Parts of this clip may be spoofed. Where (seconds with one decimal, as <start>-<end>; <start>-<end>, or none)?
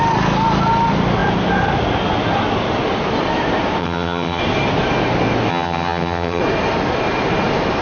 3.8-4.4; 5.5-6.4